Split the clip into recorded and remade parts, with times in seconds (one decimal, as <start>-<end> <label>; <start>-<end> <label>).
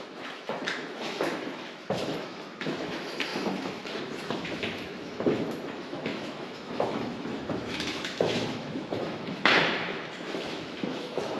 0.0-11.4 remade